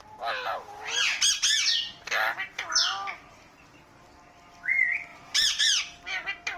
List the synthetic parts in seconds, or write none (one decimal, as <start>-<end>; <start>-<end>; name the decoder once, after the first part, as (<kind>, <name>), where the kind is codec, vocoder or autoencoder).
none